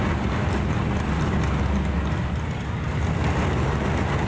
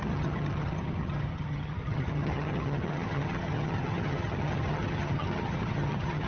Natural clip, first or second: first